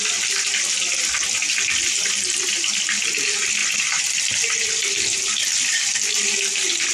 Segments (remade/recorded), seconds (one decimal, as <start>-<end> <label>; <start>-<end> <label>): 0.0-3.6 recorded; 3.6-4.2 remade; 4.2-6.9 recorded

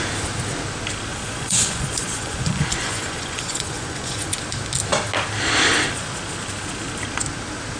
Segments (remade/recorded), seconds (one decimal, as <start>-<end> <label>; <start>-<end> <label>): 0.0-1.1 recorded; 1.1-4.4 remade; 4.4-7.8 recorded

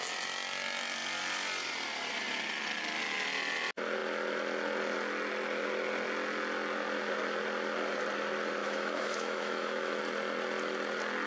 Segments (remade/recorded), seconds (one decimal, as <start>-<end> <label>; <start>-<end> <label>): 0.0-8.6 recorded; 8.6-10.0 remade; 10.0-11.3 recorded